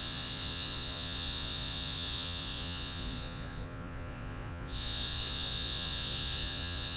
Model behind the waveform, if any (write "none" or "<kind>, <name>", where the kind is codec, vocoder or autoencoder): vocoder, Vocos